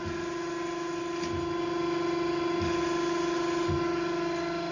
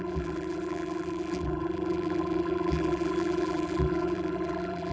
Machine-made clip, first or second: second